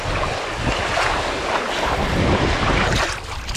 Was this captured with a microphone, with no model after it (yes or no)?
yes